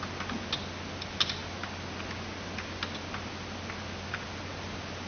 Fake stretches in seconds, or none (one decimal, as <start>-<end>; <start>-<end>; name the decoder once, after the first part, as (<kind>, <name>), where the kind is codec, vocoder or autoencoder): none